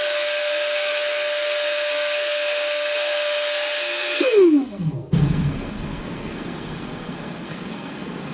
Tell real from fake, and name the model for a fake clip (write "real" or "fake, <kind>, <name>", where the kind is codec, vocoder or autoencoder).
fake, codec, SNAC